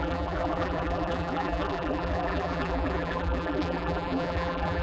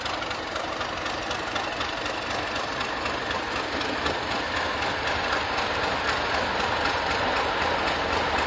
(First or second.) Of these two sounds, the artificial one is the first